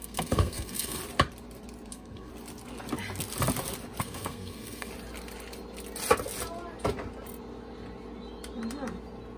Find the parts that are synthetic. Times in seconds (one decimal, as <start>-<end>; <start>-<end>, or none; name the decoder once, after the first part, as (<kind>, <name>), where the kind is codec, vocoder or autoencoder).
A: 0.0-1.0 (codec, SNAC); 1.9-2.3; 4.0-4.9

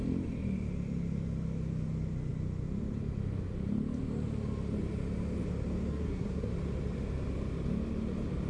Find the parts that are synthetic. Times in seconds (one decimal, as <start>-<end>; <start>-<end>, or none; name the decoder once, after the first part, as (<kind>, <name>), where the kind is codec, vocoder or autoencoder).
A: 5.9-6.5 (codec, SNAC)

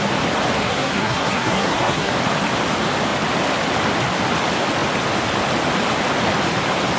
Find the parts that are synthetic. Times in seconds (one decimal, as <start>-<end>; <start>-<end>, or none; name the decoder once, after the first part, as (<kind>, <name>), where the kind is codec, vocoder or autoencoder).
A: 0.6-2.1 (codec, SNAC)

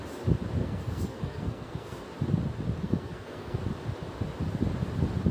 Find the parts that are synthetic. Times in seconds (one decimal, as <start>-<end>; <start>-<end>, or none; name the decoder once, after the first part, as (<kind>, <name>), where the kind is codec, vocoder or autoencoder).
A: 0.6-2.0 (codec, SNAC); 2.8-3.6